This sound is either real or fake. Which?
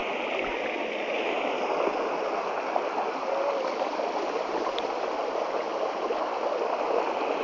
real